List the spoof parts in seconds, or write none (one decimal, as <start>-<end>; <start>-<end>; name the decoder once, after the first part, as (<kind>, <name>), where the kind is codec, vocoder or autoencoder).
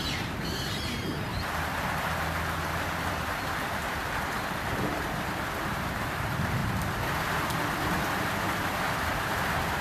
0.0-9.8 (vocoder, BigVGAN v2)